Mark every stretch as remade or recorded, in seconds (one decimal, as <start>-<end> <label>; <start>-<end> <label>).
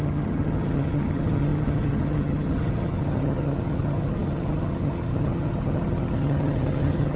0.0-7.2 remade